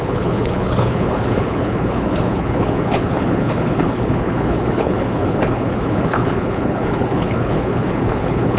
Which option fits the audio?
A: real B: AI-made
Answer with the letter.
B